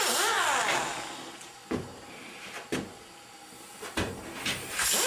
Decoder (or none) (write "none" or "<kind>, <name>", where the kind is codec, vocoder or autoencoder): none